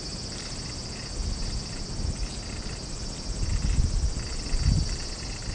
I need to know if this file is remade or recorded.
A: recorded